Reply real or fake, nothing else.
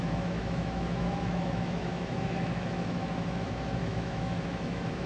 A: fake